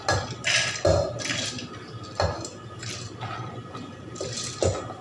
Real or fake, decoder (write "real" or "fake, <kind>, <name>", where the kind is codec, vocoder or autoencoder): real